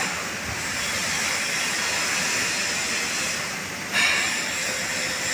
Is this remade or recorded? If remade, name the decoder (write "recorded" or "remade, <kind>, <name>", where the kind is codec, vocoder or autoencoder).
recorded